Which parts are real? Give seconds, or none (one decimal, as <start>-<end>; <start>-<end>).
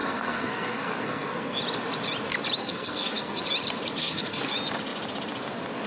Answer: 1.6-2.6; 3.4-4.0; 4.5-5.9